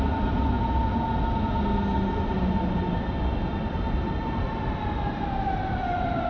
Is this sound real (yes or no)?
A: yes